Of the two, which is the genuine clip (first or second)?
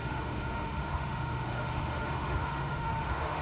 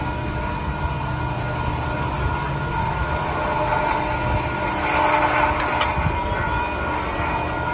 second